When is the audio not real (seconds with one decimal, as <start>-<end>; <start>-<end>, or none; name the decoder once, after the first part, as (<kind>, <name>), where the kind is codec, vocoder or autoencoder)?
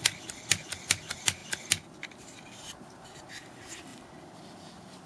none